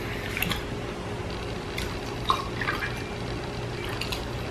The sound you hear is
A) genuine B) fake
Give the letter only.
A